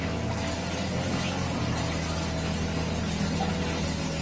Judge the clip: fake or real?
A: real